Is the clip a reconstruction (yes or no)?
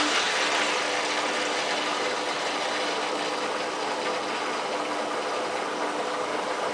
no